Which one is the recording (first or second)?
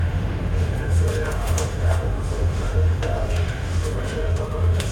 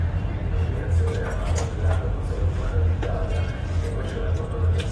second